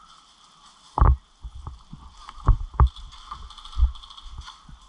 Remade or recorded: recorded